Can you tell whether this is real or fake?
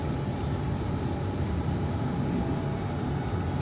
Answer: real